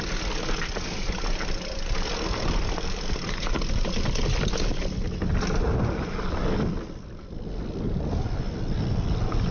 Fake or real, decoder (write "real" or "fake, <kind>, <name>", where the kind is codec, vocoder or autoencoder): real